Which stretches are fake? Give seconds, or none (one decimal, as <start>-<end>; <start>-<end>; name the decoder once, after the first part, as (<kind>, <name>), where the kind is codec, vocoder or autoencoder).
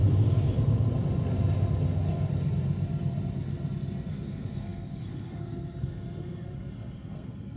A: 4.1-7.6 (codec, SNAC)